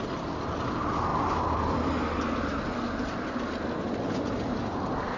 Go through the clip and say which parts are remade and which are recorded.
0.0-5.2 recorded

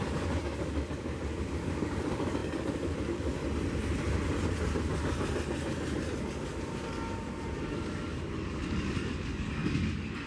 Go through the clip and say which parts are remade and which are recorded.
0.0-3.4 remade; 3.4-6.2 recorded; 6.2-10.3 remade

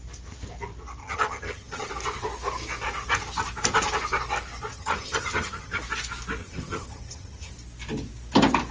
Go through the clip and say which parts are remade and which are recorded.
0.0-1.0 recorded; 1.0-1.9 remade; 1.9-4.7 recorded; 4.7-5.8 remade; 5.8-6.4 recorded; 6.4-7.5 remade; 7.5-8.7 recorded

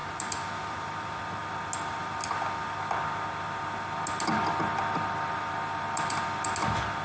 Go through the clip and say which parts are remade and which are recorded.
0.0-0.9 remade; 0.9-7.0 recorded

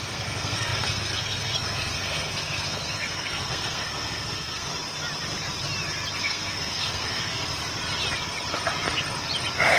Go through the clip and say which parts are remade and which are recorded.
0.0-4.7 remade; 4.7-6.2 recorded; 6.2-7.5 remade; 7.5-9.8 recorded

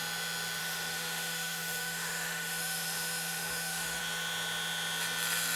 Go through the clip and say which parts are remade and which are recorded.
0.0-0.6 recorded; 0.6-4.0 remade; 4.0-5.6 recorded

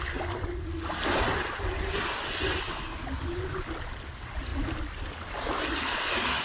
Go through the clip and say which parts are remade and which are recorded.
0.0-6.4 recorded